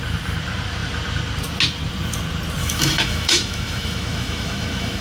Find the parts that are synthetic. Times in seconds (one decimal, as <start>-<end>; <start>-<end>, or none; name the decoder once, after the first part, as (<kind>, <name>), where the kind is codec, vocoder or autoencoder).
2.6-5.0 (autoencoder, DAC-VAE)